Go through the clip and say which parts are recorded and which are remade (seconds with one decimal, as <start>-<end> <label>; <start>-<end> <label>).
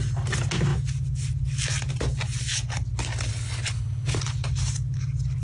0.0-3.3 recorded; 3.3-4.2 remade; 4.2-5.4 recorded